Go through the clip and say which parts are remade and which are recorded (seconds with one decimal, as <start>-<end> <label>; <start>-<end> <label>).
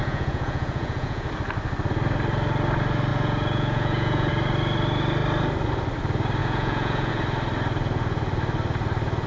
0.0-1.3 remade; 1.3-3.1 recorded; 3.1-4.3 remade; 4.3-6.4 recorded; 6.4-7.1 remade; 7.1-9.3 recorded